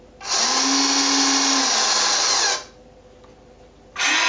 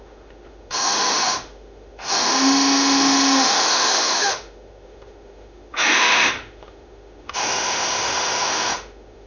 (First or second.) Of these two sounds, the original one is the first